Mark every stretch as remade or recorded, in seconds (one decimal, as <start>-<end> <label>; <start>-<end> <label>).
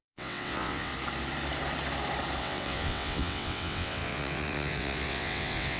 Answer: 0.0-0.9 remade; 0.9-2.4 recorded; 2.4-5.8 remade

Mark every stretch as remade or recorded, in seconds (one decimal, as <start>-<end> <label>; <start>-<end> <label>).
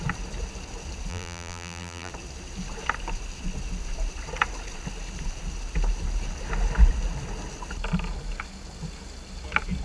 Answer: 0.0-1.1 recorded; 1.1-2.1 remade; 2.1-9.8 recorded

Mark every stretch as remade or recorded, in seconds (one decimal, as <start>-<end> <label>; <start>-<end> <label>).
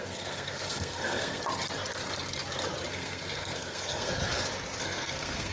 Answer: 0.0-1.4 remade; 1.4-2.9 recorded; 2.9-4.2 remade; 4.2-4.8 recorded; 4.8-5.5 remade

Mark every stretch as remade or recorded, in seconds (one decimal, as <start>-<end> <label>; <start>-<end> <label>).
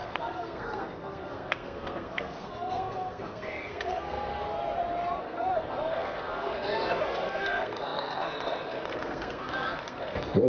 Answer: 0.0-4.3 remade; 4.3-5.2 recorded; 5.2-10.5 remade